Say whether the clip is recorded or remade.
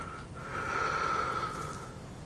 recorded